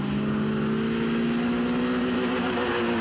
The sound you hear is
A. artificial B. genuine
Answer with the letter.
B